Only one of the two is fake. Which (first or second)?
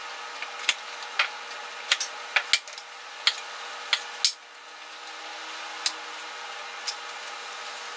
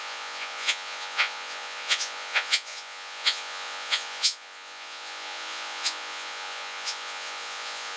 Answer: second